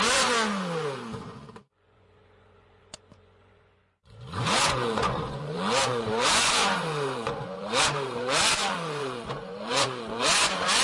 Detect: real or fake fake